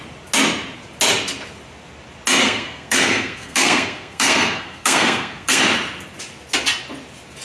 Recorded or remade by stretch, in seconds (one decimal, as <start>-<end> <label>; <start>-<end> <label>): 0.0-2.4 recorded; 2.4-5.6 remade; 5.6-7.4 recorded